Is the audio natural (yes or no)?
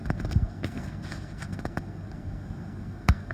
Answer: no